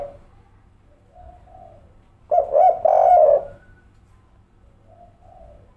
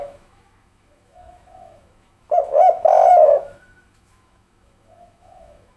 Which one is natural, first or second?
first